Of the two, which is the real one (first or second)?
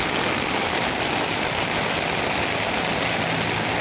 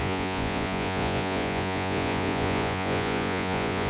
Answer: first